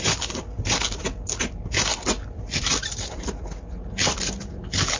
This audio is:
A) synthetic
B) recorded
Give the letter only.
B